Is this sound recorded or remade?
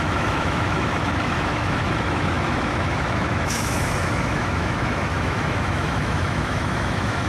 remade